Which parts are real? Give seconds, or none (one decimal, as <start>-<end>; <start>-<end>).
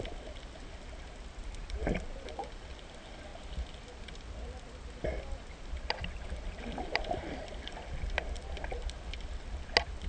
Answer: 0.0-10.1